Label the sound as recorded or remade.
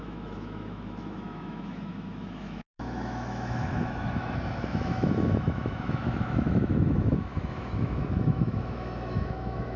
remade